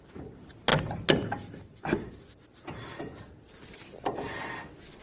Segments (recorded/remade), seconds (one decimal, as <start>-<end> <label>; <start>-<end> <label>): 0.0-5.0 recorded